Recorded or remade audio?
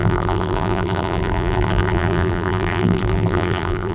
remade